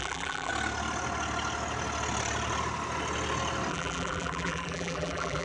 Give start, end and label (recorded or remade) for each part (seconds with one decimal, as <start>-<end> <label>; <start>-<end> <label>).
0.0-0.5 remade; 0.5-3.7 recorded; 3.7-5.4 remade